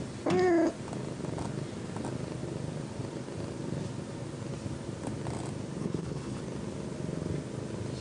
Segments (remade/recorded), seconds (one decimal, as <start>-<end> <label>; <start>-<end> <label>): 0.0-5.8 recorded; 5.8-6.4 remade; 6.4-8.0 recorded